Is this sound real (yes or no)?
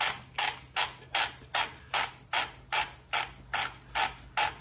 yes